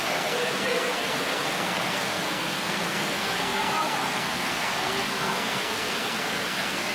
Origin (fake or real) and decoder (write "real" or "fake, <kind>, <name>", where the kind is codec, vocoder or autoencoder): fake, codec, SNAC